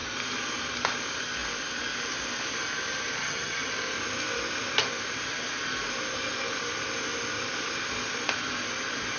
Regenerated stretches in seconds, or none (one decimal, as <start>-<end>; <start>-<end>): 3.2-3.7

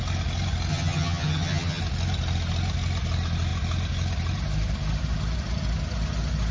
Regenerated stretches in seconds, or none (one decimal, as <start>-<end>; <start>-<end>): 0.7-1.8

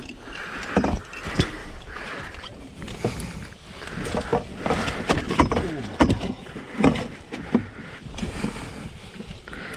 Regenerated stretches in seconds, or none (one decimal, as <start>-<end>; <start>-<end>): 1.6-2.1; 5.9-7.8

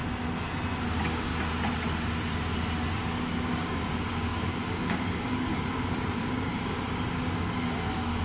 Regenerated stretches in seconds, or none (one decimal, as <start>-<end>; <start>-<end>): 0.8-1.3; 2.9-8.2

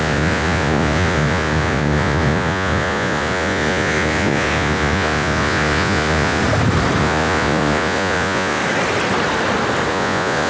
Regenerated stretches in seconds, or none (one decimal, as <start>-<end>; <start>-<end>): 0.0-6.4; 7.0-8.6; 9.9-10.5